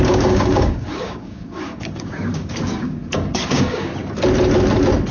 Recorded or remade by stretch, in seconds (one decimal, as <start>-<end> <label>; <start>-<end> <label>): 0.0-3.9 remade; 3.9-5.1 recorded